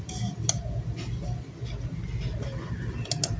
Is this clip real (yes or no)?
yes